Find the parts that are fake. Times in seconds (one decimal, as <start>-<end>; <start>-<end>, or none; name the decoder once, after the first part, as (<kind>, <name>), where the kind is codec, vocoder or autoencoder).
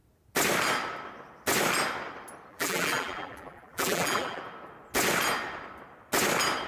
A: 2.5-4.4 (vocoder, BigVGAN v2)